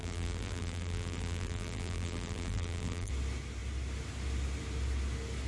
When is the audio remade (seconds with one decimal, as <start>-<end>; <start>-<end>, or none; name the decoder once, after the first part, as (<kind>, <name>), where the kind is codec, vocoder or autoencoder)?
0.0-3.1 (vocoder, BigVGAN v2)